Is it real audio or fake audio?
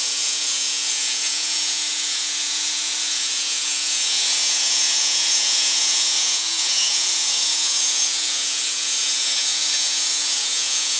fake